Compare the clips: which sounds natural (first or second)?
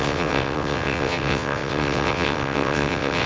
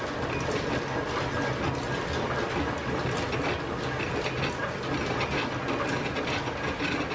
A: second